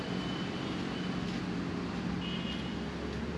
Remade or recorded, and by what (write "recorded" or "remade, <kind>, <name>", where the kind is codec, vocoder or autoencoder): recorded